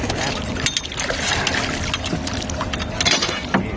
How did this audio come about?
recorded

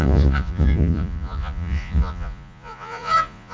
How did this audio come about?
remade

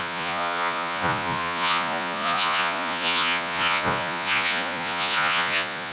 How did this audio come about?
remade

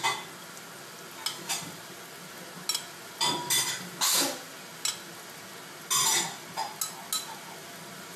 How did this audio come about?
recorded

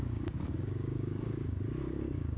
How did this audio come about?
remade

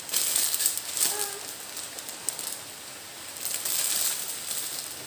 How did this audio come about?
recorded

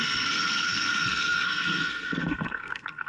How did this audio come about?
remade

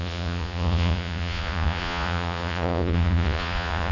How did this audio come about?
remade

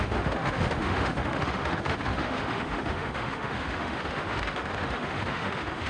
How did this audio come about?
remade